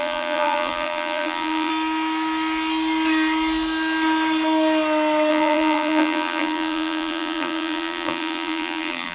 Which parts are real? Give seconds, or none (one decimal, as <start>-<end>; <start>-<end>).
1.7-5.3